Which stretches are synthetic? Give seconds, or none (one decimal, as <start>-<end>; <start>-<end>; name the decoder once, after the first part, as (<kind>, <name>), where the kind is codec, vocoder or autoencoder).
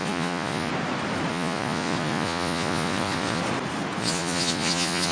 0.0-0.7 (vocoder, Vocos); 1.3-3.4; 4.0-5.1